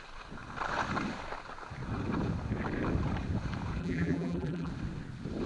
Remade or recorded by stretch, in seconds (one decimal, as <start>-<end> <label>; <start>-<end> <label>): 0.0-3.8 recorded; 3.8-4.7 remade; 4.7-5.5 recorded